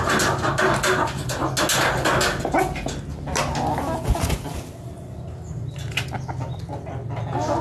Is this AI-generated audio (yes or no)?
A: no